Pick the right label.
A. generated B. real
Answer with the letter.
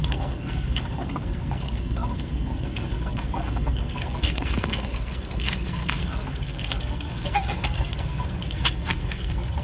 A